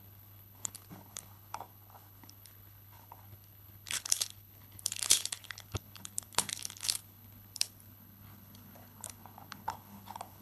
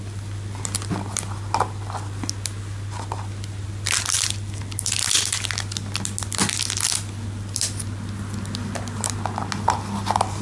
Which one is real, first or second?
second